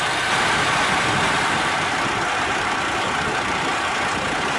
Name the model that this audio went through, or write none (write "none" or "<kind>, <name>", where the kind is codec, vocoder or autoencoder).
none